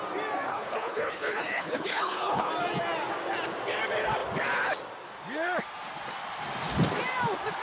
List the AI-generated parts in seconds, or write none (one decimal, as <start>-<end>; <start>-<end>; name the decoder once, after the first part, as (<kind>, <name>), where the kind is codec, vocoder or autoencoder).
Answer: 0.5-2.5 (codec, HILCodec)

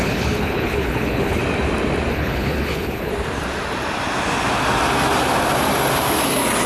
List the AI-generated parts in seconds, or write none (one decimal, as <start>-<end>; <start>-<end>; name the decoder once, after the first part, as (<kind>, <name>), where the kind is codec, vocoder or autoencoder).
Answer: 0.0-1.4 (codec, HILCodec); 2.1-3.1

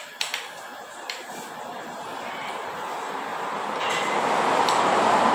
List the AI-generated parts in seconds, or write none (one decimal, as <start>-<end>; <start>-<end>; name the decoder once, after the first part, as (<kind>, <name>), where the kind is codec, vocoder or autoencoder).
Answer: 0.0-3.3 (vocoder, BigVGAN v2); 4.2-5.3

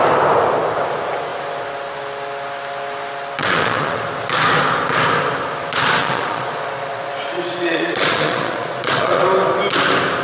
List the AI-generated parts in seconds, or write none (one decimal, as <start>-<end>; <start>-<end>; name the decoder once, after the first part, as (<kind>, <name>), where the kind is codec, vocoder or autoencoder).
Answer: 3.4-4.0 (vocoder, Vocos); 6.0-9.2

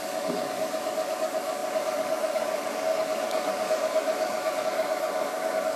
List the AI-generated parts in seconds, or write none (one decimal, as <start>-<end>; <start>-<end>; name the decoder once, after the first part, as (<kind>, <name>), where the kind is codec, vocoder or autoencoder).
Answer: 0.0-5.8 (codec, DAC)

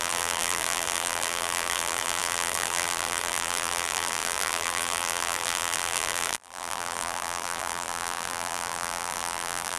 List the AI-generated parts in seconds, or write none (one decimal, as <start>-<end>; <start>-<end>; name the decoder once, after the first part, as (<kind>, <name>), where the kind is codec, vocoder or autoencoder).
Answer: 0.0-9.8 (vocoder, BigVGAN v2)

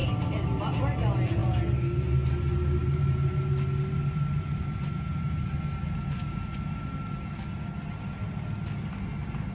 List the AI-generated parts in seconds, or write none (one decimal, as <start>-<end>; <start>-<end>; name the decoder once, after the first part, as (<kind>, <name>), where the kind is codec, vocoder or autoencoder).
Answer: none